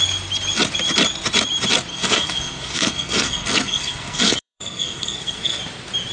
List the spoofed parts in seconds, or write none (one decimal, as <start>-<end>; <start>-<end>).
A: 1.9-5.6